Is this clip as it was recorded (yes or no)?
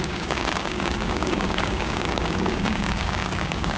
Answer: no